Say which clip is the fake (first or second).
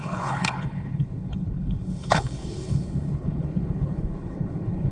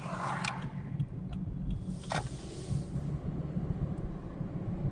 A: first